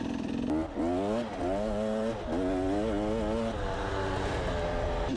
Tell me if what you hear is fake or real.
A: real